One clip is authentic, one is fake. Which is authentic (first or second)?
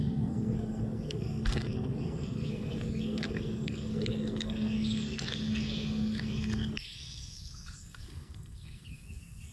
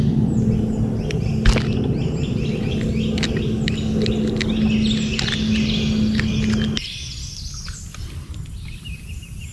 second